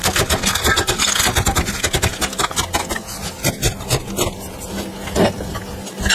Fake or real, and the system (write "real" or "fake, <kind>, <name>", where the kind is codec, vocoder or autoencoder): real